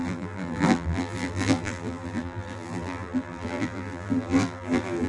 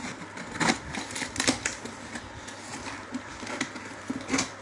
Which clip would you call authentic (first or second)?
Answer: second